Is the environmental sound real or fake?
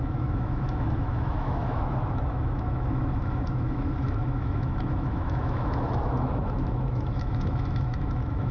fake